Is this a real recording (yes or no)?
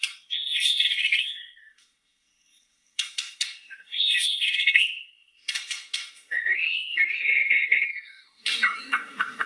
no